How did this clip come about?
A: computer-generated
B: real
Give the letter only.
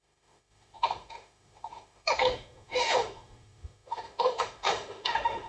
A